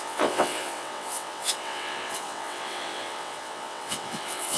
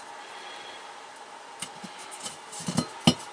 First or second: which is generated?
first